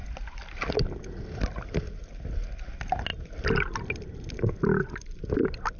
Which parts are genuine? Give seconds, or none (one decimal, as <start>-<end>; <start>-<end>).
0.0-5.8